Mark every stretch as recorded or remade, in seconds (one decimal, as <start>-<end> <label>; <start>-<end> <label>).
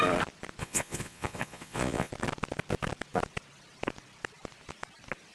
0.0-0.6 recorded; 0.6-2.1 remade; 2.1-5.3 recorded